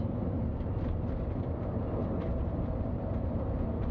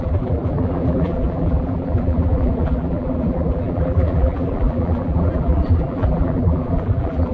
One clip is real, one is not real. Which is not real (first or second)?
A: second